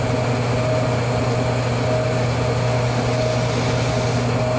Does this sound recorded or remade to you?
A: recorded